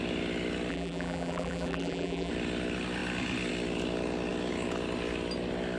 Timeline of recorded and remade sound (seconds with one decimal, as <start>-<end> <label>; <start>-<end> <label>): 0.0-0.7 recorded; 0.7-2.3 remade; 2.3-5.8 recorded